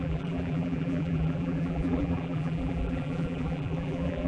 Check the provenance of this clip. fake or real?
fake